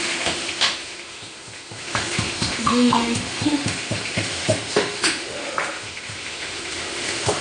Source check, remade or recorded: remade